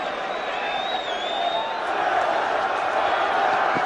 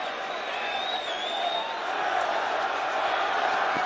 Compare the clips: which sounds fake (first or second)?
second